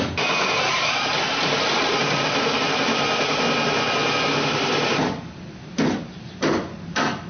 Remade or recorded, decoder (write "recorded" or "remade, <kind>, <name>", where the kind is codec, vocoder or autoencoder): recorded